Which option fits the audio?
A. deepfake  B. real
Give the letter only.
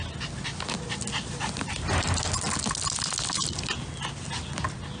B